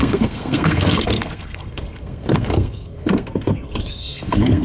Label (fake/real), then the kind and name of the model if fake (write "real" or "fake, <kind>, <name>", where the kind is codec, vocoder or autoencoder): fake, codec, SNAC